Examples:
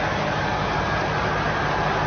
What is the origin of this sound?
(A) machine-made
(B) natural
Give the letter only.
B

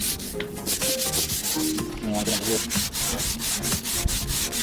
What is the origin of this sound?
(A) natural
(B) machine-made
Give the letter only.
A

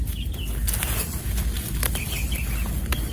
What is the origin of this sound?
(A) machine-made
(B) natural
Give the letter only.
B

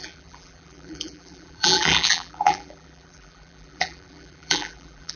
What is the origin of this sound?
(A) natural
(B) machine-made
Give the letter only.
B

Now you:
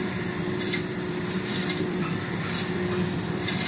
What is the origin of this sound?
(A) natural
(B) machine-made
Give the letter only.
B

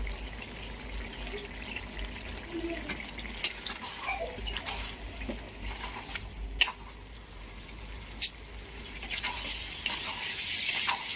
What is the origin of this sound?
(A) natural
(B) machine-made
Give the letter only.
A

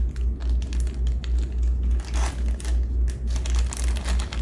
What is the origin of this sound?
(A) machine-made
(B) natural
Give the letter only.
B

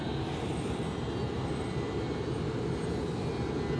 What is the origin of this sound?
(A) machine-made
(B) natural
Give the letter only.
B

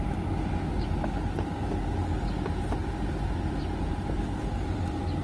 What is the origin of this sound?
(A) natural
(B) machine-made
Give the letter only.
A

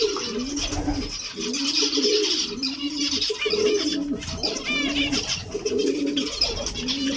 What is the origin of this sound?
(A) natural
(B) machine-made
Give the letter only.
A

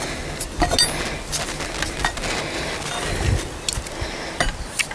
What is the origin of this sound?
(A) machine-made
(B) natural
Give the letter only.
B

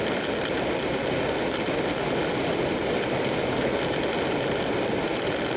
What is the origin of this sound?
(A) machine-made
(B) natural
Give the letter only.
B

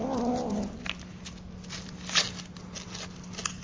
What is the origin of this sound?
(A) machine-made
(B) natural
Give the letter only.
B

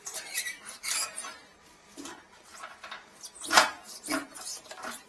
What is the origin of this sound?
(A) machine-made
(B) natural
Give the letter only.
A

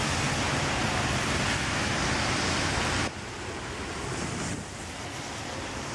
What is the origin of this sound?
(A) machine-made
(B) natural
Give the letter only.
B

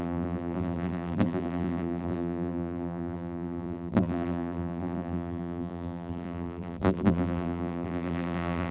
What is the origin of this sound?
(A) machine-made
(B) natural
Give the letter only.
A